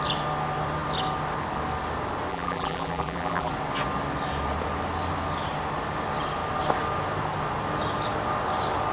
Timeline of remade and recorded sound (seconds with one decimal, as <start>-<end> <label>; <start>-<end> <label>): 0.0-2.3 recorded; 2.3-3.5 remade; 3.5-8.9 recorded